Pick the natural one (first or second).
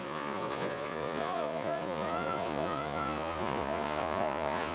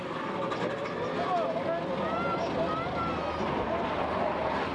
second